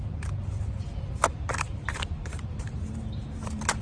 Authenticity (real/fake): fake